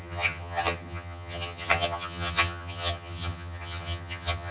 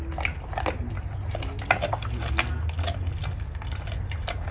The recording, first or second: second